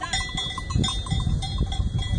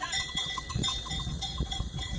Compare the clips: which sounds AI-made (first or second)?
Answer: second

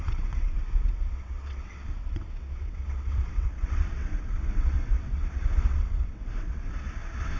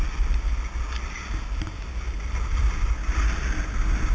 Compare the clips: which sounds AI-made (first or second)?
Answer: first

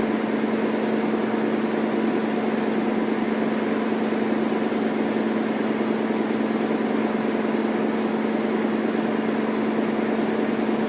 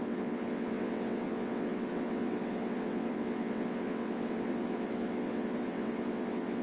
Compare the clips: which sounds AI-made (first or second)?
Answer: second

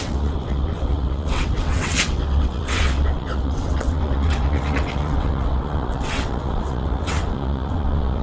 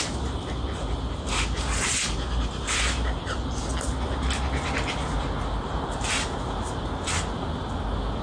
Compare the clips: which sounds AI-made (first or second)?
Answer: first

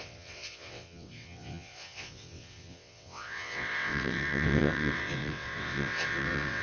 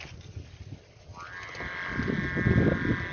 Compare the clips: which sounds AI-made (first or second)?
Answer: first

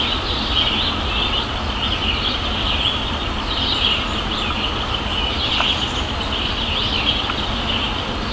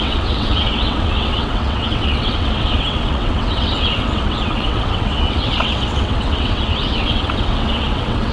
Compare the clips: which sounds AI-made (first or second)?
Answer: second